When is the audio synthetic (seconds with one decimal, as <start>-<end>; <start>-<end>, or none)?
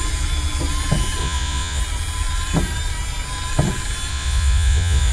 1.2-1.8; 4.1-5.1